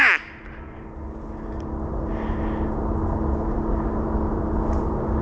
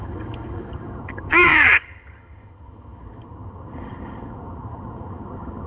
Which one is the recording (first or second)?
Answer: first